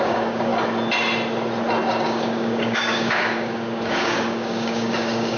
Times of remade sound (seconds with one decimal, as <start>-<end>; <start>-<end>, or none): 0.0-0.5; 1.9-5.4